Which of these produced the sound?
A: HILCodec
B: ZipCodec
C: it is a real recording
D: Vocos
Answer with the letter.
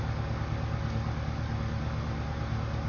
C